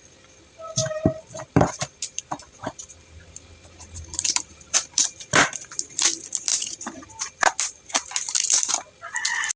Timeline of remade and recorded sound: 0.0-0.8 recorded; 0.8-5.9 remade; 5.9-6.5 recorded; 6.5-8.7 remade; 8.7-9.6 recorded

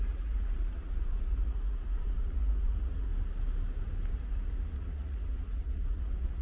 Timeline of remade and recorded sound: 0.0-3.1 remade; 3.1-4.1 recorded; 4.1-6.4 remade

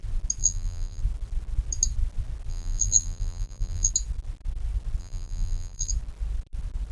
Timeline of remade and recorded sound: 0.0-0.4 recorded; 0.4-1.0 remade; 1.0-2.5 recorded; 2.5-3.9 remade; 3.9-5.0 recorded; 5.0-5.9 remade; 5.9-6.9 recorded

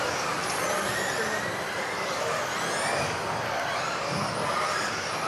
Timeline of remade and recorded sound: 0.0-5.3 recorded

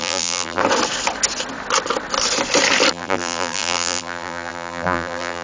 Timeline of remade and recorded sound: 0.0-0.6 remade; 0.6-2.9 recorded; 2.9-5.4 remade

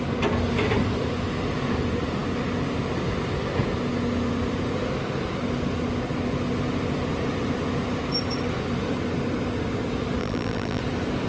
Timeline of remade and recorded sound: 0.0-10.2 recorded; 10.2-10.8 remade; 10.8-11.3 recorded

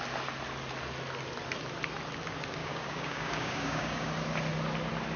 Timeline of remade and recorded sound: 0.0-2.6 recorded; 2.6-4.1 remade; 4.1-5.2 recorded